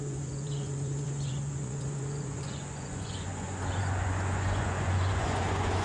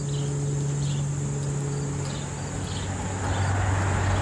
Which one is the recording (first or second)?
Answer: second